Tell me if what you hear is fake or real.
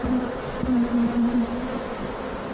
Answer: real